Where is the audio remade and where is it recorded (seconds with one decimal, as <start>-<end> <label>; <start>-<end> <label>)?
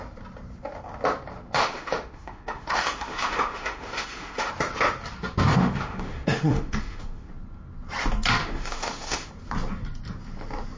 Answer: 0.0-1.6 recorded; 1.6-4.5 remade; 4.5-5.5 recorded; 5.5-7.3 remade; 7.3-8.4 recorded; 8.4-9.3 remade; 9.3-10.8 recorded